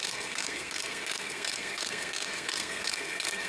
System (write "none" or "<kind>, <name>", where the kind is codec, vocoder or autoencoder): codec, SNAC